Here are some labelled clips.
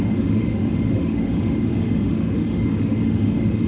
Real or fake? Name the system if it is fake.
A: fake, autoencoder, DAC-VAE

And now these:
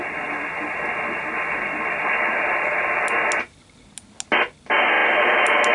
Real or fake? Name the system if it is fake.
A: real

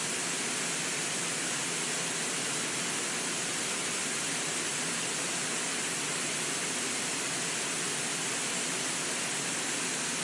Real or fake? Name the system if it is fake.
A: real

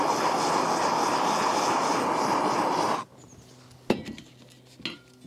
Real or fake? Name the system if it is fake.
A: real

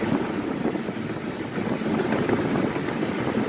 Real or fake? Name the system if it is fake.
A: real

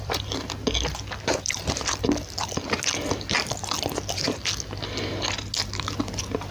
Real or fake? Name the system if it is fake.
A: real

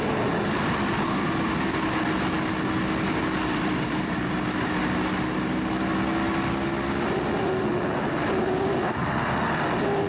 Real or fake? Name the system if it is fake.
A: real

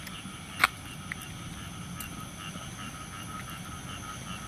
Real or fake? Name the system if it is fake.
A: real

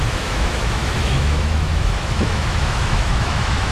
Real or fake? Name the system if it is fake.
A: fake, autoencoder, DAC-VAE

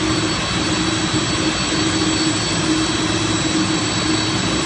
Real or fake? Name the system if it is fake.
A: real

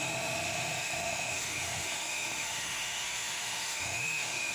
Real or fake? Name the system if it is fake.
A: fake, autoencoder, DAC-VAE